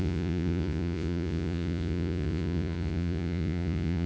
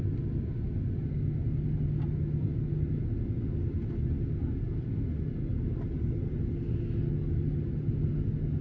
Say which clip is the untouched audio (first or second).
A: second